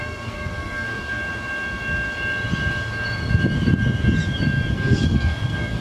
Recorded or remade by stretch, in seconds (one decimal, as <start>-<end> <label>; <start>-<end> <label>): 0.0-1.2 remade; 1.2-4.7 recorded; 4.7-5.8 remade